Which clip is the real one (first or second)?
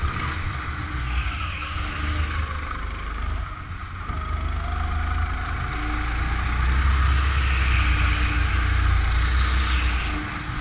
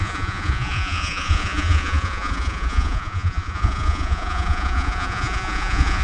first